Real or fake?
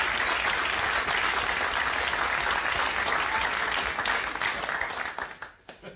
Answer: real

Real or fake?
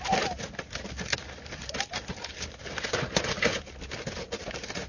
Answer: real